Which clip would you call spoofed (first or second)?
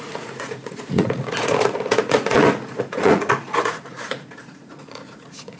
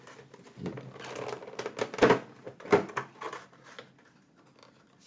first